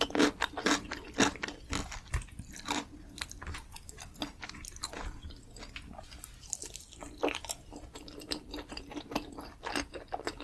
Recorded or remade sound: recorded